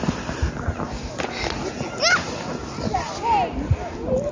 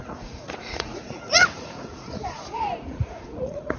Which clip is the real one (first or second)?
first